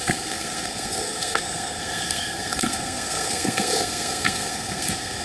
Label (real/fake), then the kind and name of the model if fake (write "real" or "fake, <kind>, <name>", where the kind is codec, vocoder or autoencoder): fake, codec, SNAC